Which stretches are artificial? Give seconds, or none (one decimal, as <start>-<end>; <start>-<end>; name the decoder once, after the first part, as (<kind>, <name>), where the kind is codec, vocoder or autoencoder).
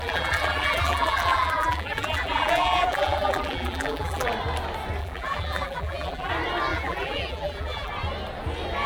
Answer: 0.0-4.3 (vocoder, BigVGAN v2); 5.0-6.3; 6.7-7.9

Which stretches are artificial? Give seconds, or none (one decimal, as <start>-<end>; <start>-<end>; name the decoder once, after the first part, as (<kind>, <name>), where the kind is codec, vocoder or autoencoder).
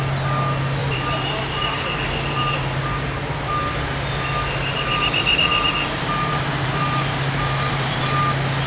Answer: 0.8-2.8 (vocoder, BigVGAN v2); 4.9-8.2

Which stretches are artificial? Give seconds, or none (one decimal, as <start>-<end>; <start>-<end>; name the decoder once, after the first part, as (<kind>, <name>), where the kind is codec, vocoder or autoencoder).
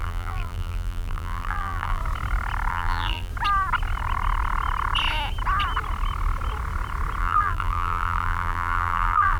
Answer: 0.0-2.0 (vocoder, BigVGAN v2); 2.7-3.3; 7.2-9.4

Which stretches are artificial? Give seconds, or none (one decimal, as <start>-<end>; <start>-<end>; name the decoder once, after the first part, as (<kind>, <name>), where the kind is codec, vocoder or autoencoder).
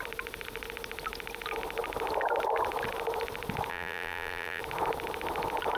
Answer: 3.7-4.6 (vocoder, BigVGAN v2)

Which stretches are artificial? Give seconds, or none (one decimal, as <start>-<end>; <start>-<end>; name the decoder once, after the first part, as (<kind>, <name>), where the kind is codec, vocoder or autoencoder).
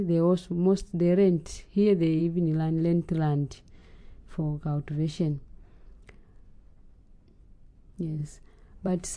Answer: 8.2-9.2 (vocoder, BigVGAN v2)